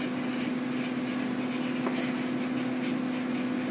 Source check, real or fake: real